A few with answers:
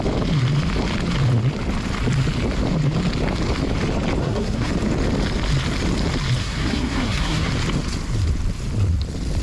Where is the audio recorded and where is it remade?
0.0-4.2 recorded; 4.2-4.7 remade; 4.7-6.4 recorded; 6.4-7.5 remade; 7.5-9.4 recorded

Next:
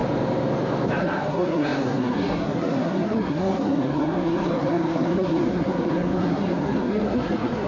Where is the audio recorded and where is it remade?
0.0-1.0 recorded; 1.0-7.7 remade

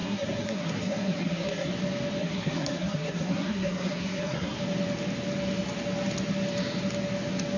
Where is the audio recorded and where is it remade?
0.0-1.7 remade; 1.7-2.2 recorded; 2.2-4.6 remade; 4.6-7.6 recorded

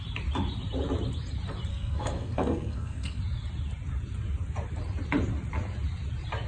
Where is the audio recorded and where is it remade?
0.0-1.7 recorded; 1.7-3.2 remade; 3.2-6.5 recorded

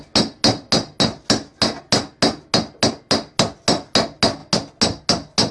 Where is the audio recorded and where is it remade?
0.0-5.5 recorded

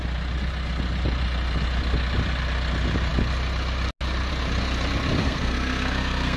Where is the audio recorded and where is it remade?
0.0-5.2 recorded; 5.2-6.4 remade

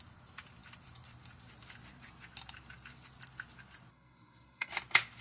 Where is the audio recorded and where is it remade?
0.0-3.9 recorded; 3.9-4.7 remade; 4.7-5.2 recorded